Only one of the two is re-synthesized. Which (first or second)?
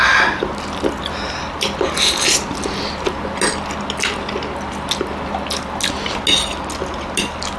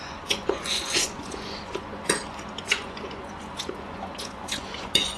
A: second